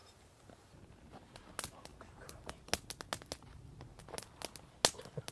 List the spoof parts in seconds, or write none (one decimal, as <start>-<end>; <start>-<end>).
0.0-0.9; 1.9-2.5